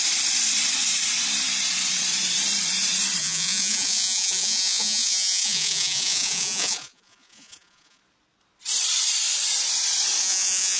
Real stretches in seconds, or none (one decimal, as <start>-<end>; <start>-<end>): 0.0-3.2; 8.0-10.2